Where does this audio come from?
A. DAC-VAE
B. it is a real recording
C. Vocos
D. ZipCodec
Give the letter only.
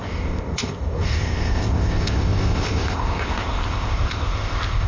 D